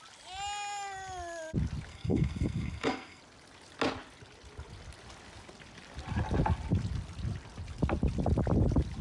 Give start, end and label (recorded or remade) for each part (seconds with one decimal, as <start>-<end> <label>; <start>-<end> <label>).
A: 0.0-1.9 recorded; 1.9-3.2 remade; 3.2-9.0 recorded